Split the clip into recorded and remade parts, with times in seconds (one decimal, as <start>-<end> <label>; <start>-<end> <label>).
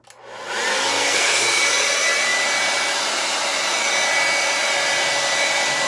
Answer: 0.0-0.7 recorded; 0.7-1.6 remade; 1.6-5.9 recorded